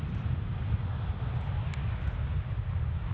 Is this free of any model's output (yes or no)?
yes